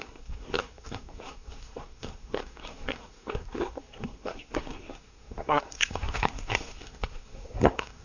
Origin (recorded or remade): remade